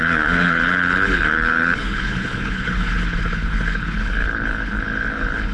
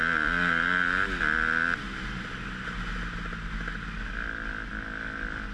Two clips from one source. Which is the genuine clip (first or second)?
second